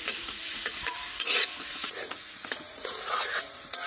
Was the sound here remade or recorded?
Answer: remade